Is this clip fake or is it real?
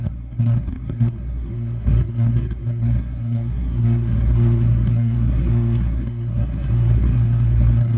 fake